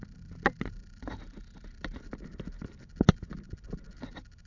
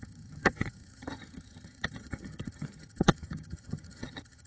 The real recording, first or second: first